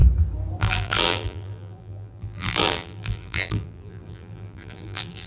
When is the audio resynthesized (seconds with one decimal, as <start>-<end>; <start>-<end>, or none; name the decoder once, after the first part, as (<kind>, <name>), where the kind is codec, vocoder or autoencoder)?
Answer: 0.6-5.3 (vocoder, BigVGAN v2)